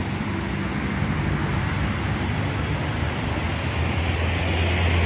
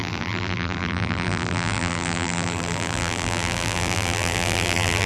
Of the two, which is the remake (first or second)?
second